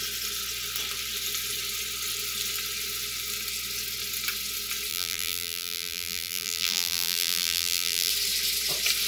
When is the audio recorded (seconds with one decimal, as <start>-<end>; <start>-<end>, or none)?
0.0-4.9; 8.1-9.1